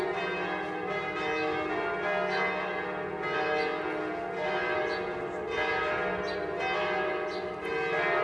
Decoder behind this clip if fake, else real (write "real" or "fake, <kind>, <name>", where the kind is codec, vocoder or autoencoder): real